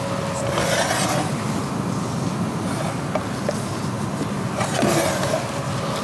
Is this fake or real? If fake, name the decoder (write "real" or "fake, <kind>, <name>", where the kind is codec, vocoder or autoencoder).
real